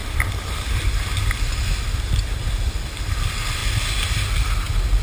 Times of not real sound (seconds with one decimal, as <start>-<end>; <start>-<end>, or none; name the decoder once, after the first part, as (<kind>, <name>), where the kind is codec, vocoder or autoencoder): 0.0-2.5 (vocoder, BigVGAN v2)